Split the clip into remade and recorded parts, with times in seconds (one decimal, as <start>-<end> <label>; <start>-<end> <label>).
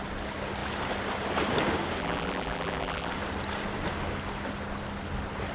0.0-2.0 recorded; 2.0-3.1 remade; 3.1-5.5 recorded